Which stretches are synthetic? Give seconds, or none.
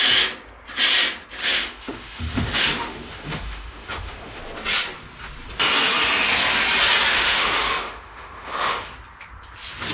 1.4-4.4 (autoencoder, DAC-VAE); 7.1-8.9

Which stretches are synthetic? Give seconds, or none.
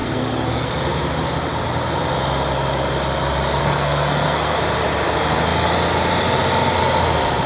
0.0-0.7 (codec, SNAC); 3.6-4.6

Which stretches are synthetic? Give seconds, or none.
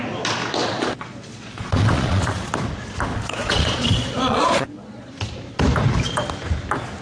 0.6-2.5 (vocoder, Vocos); 3.1-5.1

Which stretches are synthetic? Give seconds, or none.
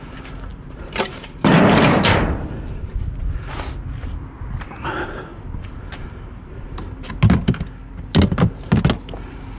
0.5-3.0 (vocoder, BigVGAN v2); 5.3-7.1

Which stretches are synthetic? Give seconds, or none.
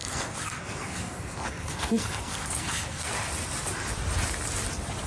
0.0-3.1 (codec, SNAC)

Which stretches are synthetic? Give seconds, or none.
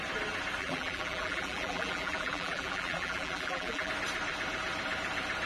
0.6-3.9 (vocoder, BigVGAN v2)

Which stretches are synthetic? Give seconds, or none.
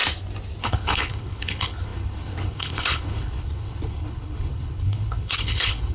0.6-5.9 (codec, HILCodec)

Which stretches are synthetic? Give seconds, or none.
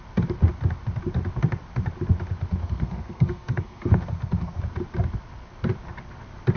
2.6-4.6 (codec, SNAC)